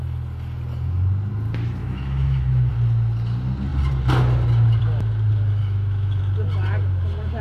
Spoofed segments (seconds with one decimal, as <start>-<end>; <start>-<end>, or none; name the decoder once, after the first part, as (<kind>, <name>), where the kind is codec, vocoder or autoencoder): 1.8-2.7 (autoencoder, DAC-VAE); 5.6-6.2